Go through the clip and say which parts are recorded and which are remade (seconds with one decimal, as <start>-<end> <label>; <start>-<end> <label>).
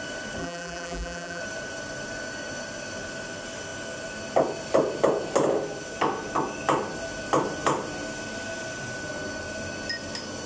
0.0-0.4 recorded; 0.4-1.4 remade; 1.4-10.5 recorded